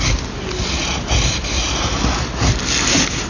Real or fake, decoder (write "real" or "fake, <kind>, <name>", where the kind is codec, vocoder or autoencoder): real